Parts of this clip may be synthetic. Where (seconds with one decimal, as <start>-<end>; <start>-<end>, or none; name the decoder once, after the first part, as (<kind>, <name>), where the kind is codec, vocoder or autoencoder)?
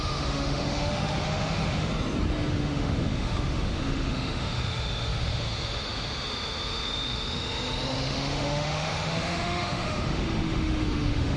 0.0-1.9 (autoencoder, DAC-VAE); 2.5-11.4